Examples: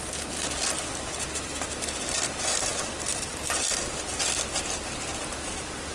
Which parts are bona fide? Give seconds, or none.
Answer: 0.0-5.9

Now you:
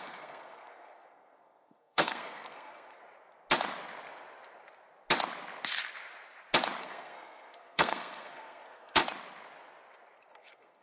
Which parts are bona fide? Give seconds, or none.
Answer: 3.0-6.8; 9.0-10.3

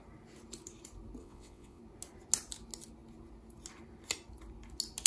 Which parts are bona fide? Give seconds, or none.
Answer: 0.0-1.2; 1.8-5.1

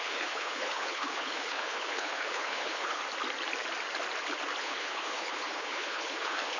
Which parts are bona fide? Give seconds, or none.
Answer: 3.0-4.6

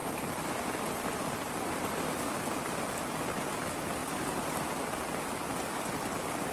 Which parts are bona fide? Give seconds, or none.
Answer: 0.0-6.5

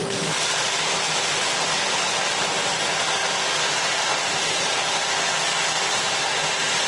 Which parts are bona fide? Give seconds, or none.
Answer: 0.0-3.2; 4.6-6.9